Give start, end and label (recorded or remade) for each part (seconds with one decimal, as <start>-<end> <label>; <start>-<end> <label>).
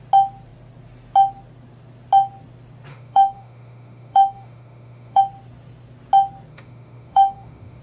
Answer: 0.0-2.9 recorded; 2.9-5.2 remade; 5.2-6.5 recorded; 6.5-7.8 remade